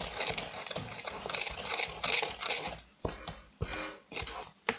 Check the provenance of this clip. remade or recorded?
recorded